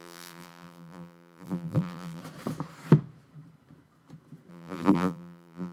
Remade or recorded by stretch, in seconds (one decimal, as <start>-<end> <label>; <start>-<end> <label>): 0.0-2.2 remade; 2.2-4.5 recorded; 4.5-5.7 remade